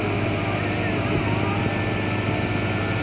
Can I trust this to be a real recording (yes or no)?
yes